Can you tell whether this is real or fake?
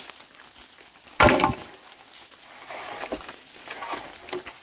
real